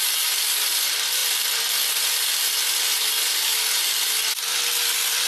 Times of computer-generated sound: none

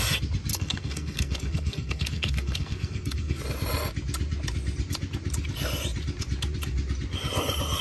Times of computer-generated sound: 0.5-3.4 (codec, SNAC)

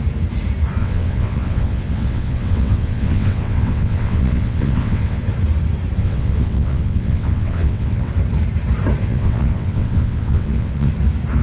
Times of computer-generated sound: 0.8-5.2 (vocoder, WaveNeXt); 6.0-8.1; 9.0-10.9

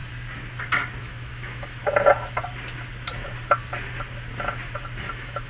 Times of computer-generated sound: 1.0-1.8 (autoencoder, DAC-VAE); 5.1-5.5